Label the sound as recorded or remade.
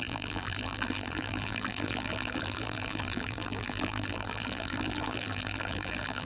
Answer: remade